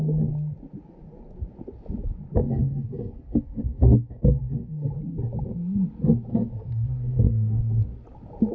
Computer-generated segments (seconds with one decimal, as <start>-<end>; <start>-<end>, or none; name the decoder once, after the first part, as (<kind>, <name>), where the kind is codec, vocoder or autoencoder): 2.4-4.9 (codec, SNAC); 6.3-7.6